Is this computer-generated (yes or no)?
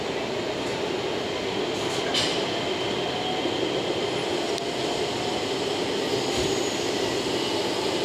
no